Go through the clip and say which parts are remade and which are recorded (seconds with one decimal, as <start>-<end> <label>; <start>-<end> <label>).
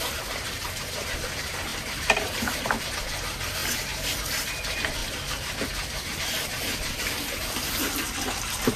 0.0-1.7 recorded; 1.7-2.9 remade; 2.9-5.0 recorded; 5.0-7.1 remade; 7.1-8.8 recorded